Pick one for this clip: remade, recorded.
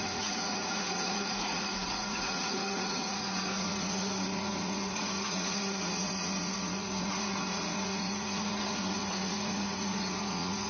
remade